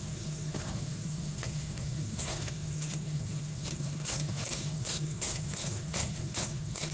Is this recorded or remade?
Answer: remade